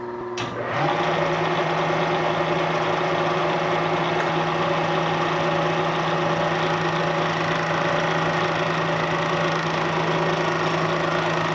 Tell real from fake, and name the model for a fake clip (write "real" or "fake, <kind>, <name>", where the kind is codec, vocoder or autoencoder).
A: real